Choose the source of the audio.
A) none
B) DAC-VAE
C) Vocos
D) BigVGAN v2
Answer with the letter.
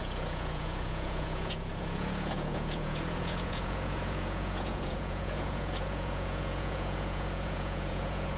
C